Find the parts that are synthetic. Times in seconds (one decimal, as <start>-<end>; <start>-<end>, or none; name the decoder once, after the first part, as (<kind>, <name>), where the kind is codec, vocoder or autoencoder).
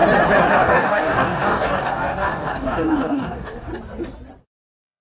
0.5-3.7 (codec, DAC); 4.4-5.0